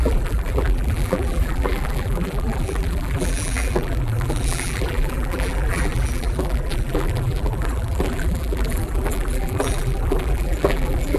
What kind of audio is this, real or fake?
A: fake